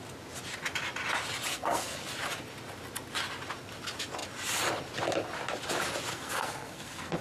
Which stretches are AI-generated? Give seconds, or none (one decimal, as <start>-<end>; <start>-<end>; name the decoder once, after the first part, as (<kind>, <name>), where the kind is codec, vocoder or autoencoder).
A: 1.5-2.1 (codec, SNAC); 6.1-7.2